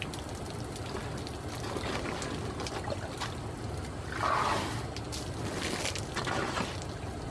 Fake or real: real